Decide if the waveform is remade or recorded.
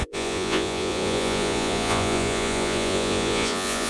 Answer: remade